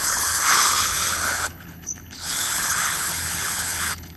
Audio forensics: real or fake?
fake